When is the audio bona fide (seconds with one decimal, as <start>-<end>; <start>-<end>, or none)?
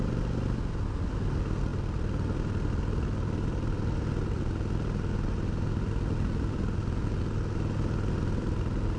0.0-9.0